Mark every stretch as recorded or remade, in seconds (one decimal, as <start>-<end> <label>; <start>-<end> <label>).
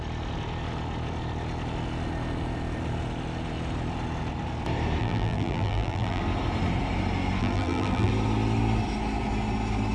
0.0-5.0 recorded; 5.0-6.2 remade; 6.2-7.4 recorded; 7.4-8.1 remade; 8.1-9.9 recorded